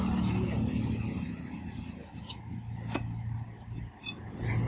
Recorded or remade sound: recorded